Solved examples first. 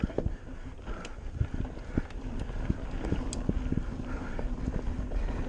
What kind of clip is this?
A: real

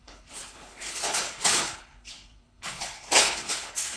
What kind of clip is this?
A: fake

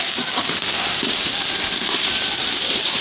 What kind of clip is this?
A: real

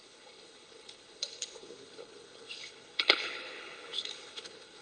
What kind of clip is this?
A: fake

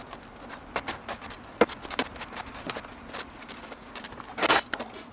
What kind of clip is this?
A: real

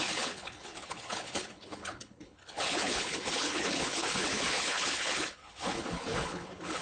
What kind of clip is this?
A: fake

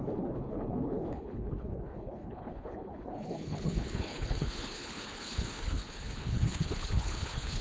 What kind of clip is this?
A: fake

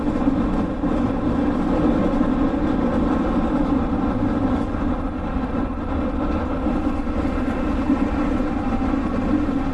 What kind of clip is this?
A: real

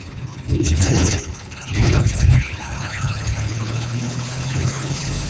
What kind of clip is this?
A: fake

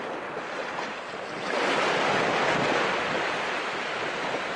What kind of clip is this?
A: real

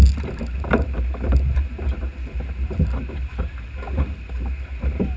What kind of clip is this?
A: real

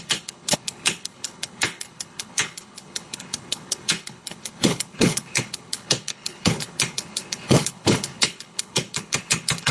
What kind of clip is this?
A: fake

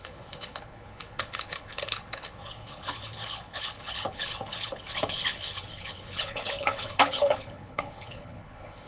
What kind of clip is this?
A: fake